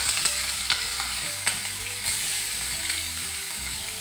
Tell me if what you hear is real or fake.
fake